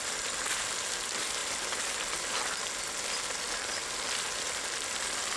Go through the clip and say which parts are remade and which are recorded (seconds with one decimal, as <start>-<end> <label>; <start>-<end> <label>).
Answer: 0.0-5.4 recorded